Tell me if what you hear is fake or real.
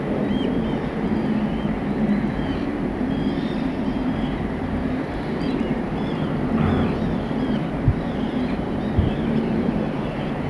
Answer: fake